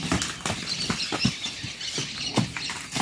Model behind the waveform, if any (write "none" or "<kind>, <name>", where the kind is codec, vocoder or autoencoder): none